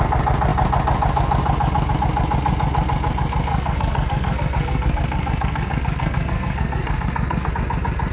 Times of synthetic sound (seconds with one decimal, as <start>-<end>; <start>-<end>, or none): 3.5-7.5